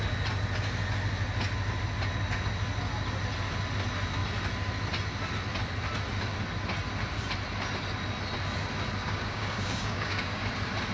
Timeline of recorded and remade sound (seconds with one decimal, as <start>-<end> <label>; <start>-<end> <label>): 0.0-9.0 recorded; 9.0-10.4 remade; 10.4-10.9 recorded